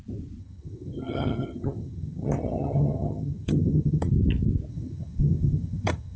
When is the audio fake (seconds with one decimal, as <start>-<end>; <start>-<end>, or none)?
0.4-4.1; 4.7-6.2